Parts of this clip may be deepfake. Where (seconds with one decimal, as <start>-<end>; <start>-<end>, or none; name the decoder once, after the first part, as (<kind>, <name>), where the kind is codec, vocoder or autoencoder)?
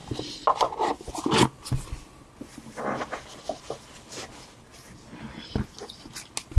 none